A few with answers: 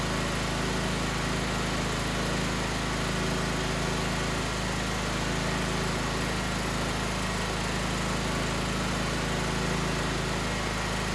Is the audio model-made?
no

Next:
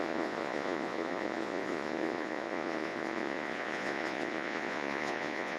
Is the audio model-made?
yes